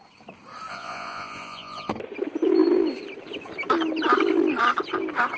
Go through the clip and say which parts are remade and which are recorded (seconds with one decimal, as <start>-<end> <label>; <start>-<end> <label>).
0.0-0.7 recorded; 0.7-1.9 remade; 1.9-5.4 recorded